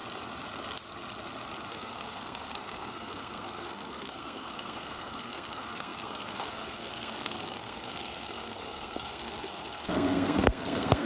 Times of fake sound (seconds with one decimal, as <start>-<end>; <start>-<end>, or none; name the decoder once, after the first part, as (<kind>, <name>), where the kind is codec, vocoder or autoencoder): 1.7-11.1 (codec, SNAC)